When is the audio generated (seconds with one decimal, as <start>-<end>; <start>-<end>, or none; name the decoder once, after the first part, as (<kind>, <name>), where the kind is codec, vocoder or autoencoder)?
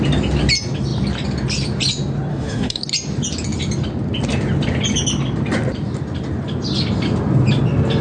2.3-2.8 (autoencoder, DAC-VAE)